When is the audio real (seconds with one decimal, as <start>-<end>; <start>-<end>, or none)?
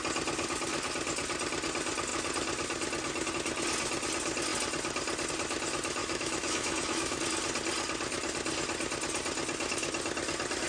0.0-6.0; 7.2-10.7